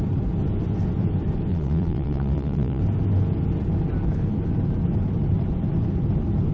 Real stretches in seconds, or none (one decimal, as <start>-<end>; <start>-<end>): 0.0-1.5; 2.8-6.5